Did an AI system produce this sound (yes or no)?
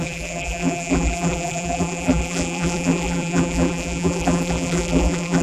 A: yes